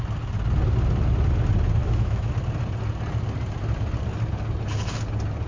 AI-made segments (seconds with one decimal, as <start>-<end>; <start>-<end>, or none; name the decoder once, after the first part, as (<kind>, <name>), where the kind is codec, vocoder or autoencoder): 1.8-2.3 (autoencoder, DAC-VAE)